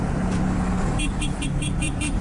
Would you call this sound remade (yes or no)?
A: yes